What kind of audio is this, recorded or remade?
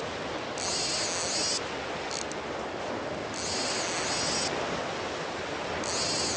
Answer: recorded